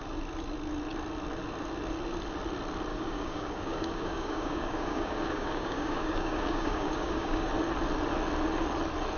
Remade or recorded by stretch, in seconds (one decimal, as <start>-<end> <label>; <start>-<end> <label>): 0.0-2.9 recorded; 2.9-7.5 remade; 7.5-9.2 recorded